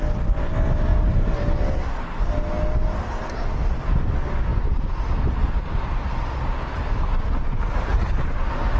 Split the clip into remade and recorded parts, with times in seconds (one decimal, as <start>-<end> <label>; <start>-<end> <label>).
0.0-7.9 recorded; 7.9-8.8 remade